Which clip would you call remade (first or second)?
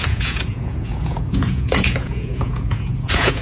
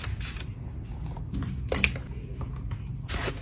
first